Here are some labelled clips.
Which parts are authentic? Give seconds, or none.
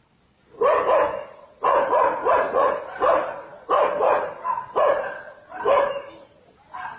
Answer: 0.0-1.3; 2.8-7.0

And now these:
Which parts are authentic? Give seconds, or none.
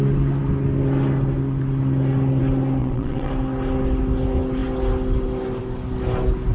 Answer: 0.0-2.8; 3.3-6.5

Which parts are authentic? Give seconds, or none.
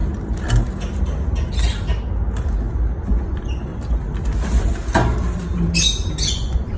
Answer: 0.0-3.0; 3.7-6.3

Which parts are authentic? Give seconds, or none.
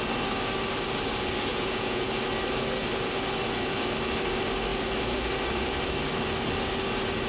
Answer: 0.0-1.5; 2.1-7.3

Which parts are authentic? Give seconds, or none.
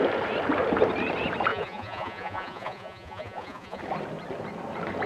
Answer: 0.0-1.5; 3.8-5.1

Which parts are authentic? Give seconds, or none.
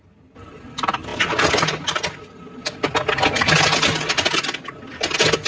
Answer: 0.0-5.5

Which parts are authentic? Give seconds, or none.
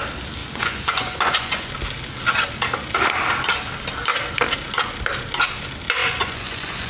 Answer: 0.0-0.4; 1.7-6.0